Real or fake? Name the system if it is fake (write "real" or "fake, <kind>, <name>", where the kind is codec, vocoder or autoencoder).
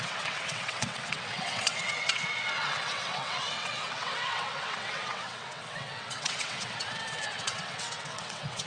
fake, vocoder, WaveNeXt